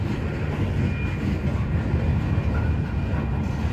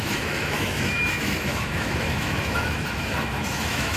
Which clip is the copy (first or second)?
second